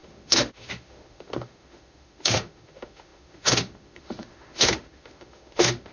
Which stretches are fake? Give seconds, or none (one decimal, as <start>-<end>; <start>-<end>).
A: 0.0-5.9